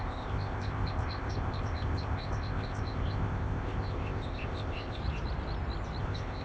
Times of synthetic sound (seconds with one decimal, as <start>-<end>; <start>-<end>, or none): 0.0-5.0; 6.0-6.4